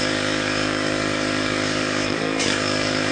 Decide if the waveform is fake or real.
fake